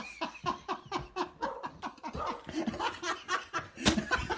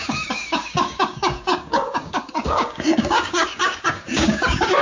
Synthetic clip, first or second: second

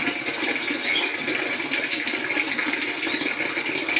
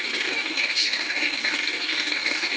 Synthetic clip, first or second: second